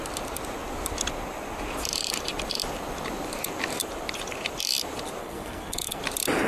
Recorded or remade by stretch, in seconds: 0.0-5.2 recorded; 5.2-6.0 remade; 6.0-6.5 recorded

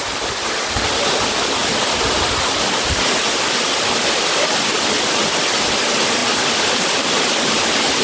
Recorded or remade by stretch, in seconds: 0.0-8.0 recorded